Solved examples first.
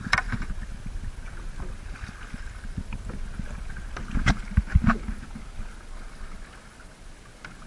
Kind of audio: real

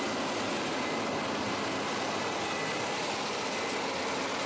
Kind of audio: real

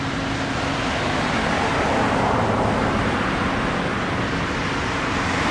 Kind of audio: real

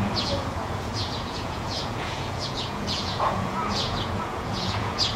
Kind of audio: fake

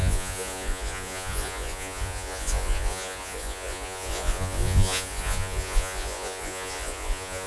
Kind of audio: fake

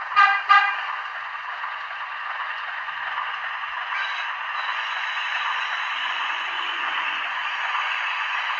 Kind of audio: fake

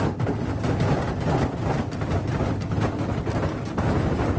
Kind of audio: real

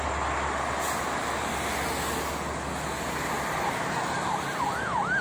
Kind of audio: real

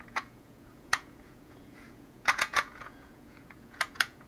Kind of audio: fake